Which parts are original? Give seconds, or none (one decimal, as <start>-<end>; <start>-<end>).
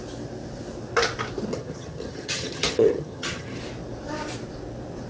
0.0-1.5; 3.6-5.1